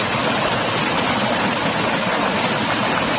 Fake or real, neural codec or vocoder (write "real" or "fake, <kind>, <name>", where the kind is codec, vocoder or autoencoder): real